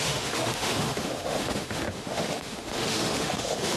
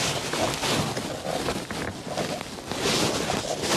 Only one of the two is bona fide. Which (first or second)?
second